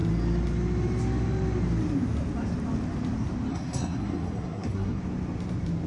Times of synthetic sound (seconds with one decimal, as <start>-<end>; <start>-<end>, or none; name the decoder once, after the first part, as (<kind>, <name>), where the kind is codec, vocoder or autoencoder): 3.5-5.0 (codec, SNAC)